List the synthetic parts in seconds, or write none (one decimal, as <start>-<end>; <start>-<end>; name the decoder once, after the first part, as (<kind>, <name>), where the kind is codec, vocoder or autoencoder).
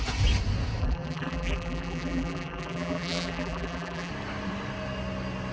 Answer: 0.8-4.1 (vocoder, BigVGAN v2)